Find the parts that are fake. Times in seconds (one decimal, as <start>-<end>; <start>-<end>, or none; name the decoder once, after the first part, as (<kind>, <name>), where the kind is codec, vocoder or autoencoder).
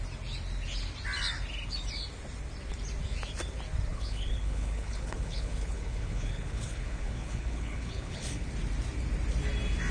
3.9-8.5 (codec, HILCodec)